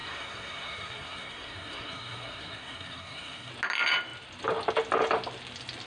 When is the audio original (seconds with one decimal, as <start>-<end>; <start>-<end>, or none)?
3.5-5.9